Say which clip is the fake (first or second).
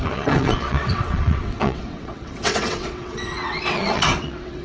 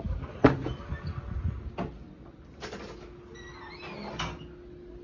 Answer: first